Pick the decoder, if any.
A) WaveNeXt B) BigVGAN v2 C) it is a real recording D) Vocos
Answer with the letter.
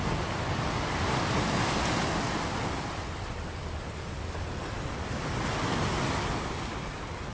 C